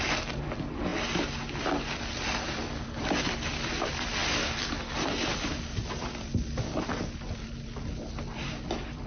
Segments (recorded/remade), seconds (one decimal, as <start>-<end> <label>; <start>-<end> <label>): 0.0-0.9 remade; 0.9-1.6 recorded; 1.6-9.1 remade